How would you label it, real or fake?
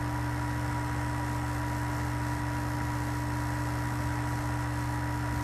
real